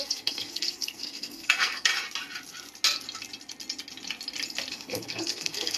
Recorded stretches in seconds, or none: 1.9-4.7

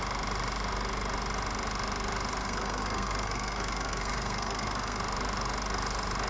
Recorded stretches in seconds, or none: 0.0-2.4; 5.0-6.3

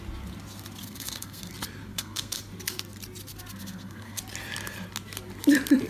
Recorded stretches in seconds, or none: 0.0-0.8; 1.5-1.9; 2.4-3.6; 4.2-5.9

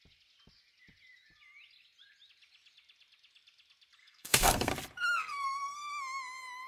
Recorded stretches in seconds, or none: 0.0-4.0; 4.7-5.2; 5.9-6.7

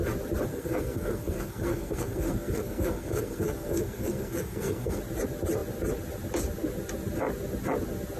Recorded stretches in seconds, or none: 0.0-0.5; 5.0-8.2

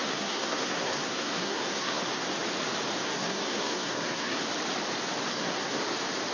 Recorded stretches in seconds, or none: 2.0-3.1; 4.4-5.3; 5.8-6.3